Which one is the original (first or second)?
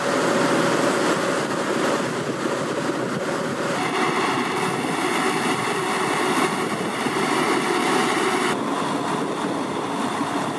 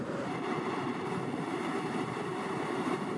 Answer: first